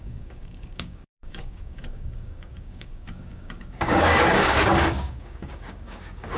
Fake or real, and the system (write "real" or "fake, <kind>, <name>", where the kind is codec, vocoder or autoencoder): fake, codec, DAC